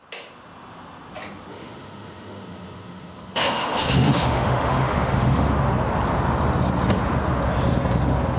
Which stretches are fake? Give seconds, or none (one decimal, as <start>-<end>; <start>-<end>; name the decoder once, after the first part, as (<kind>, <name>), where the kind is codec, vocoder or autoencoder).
1.5-5.6 (autoencoder, DAC-VAE)